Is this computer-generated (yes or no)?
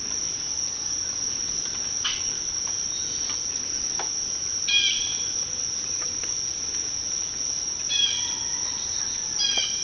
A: no